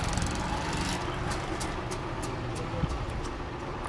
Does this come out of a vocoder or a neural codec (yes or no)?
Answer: no